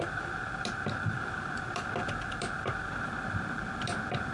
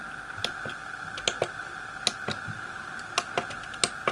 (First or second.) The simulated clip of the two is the first